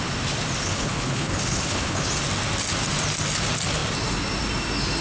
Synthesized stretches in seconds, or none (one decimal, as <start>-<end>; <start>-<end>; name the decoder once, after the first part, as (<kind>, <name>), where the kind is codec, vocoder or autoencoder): 0.6-2.1 (codec, HILCodec)